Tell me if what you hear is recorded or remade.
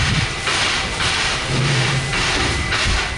remade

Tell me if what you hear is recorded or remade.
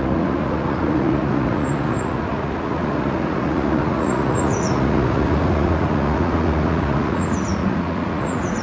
remade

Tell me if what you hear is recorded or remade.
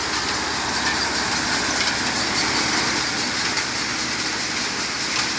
recorded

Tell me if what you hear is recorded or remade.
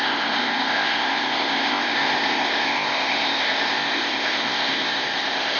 remade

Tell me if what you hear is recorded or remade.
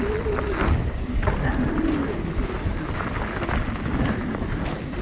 recorded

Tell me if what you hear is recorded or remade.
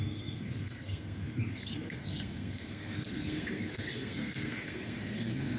remade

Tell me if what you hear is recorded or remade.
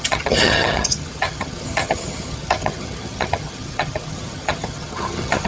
remade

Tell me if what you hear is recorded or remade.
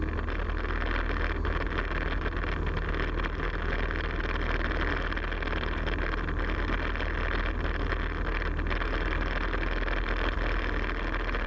recorded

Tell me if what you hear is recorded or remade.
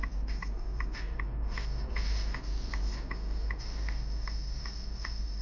recorded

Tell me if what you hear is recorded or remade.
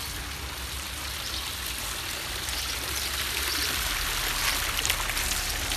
recorded